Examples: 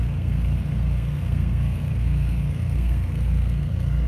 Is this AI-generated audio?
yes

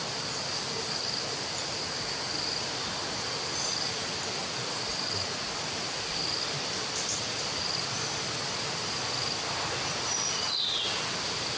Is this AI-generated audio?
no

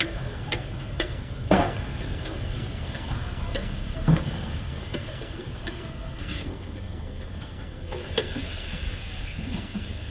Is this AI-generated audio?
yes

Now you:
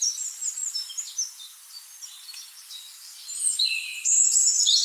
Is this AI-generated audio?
no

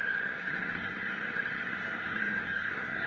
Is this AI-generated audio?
yes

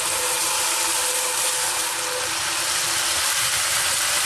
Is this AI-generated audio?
no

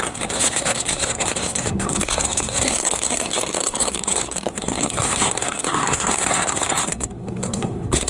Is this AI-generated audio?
yes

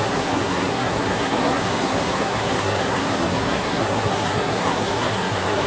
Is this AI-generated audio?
yes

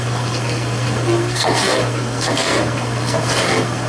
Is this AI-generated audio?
yes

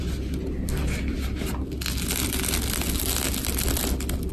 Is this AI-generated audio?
no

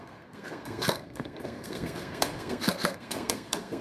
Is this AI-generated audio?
yes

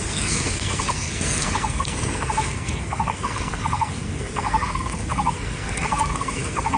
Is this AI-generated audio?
yes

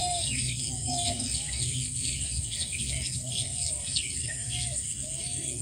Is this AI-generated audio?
yes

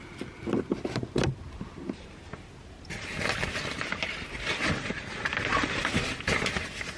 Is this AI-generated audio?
no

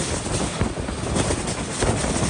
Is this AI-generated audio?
no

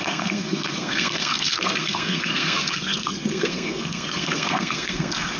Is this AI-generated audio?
yes